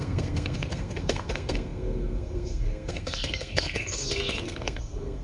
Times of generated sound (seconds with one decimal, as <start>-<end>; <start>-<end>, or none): 0.0-5.2